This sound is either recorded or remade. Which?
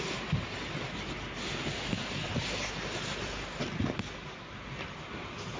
recorded